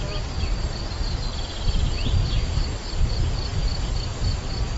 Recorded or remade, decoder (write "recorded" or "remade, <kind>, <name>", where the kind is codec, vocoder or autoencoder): recorded